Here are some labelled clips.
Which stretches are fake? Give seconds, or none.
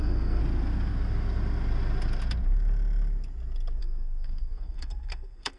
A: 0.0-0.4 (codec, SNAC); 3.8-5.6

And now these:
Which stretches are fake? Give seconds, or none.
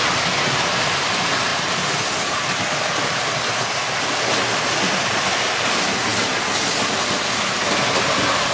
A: none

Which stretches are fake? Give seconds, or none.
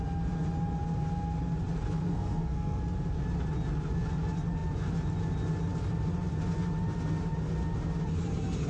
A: 2.0-2.8 (codec, SNAC)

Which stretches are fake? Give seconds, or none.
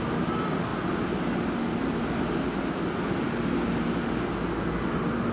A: none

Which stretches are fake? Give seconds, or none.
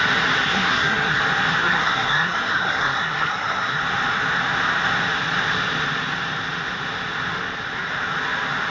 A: 0.4-1.2 (codec, SNAC); 1.6-3.8